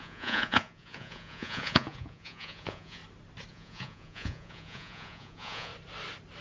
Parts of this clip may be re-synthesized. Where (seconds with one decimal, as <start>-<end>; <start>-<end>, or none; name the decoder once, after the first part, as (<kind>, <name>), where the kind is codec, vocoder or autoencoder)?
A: 0.0-3.0 (vocoder, Vocos); 3.5-5.7